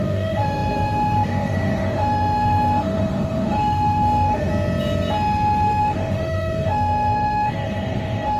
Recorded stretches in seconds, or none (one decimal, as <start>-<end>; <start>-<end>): 4.5-5.8